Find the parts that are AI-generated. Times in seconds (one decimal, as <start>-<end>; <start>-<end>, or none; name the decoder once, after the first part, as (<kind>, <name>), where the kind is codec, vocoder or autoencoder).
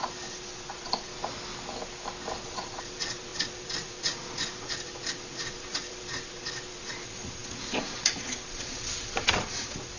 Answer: 0.0-1.2 (vocoder, Vocos); 2.4-10.0